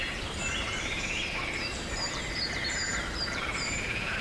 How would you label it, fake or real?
fake